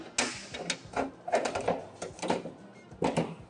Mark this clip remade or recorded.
recorded